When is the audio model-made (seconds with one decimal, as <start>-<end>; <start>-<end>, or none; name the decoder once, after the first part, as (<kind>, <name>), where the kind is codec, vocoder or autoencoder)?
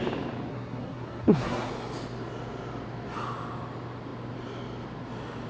0.5-1.7 (codec, SNAC)